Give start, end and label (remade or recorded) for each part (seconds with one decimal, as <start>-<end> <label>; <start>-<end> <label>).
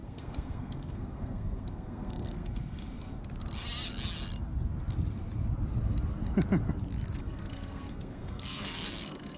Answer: 0.0-3.2 remade; 3.2-7.2 recorded; 7.2-9.4 remade